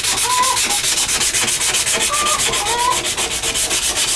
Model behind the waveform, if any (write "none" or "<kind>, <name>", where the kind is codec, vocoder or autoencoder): none